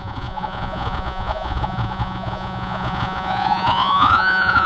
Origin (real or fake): fake